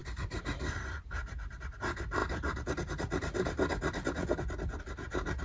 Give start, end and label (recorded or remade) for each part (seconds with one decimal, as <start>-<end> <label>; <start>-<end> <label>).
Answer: 0.0-1.6 remade; 1.6-5.4 recorded